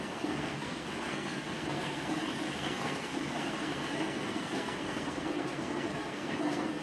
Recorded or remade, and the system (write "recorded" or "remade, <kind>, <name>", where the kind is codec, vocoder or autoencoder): remade, codec, SNAC